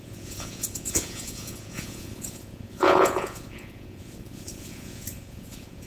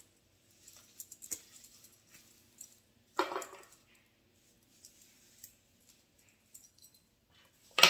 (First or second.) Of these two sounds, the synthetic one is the first